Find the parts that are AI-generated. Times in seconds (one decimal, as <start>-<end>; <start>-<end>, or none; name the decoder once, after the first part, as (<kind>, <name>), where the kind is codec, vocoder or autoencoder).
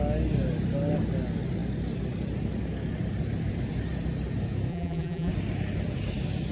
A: 4.7-5.3 (vocoder, BigVGAN v2)